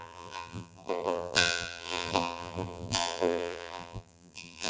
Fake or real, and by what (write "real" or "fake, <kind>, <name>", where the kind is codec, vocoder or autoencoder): fake, vocoder, BigVGAN v2